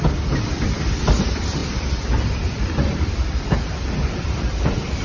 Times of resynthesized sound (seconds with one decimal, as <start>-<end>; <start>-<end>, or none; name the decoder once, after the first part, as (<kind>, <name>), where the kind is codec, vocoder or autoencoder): 0.0-5.0 (vocoder, BigVGAN v2)